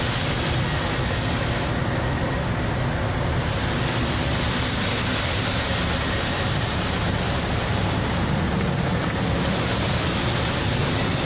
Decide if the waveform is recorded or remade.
recorded